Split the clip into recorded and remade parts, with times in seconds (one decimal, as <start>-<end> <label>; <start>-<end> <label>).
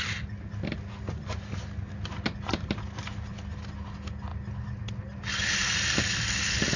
0.0-6.8 recorded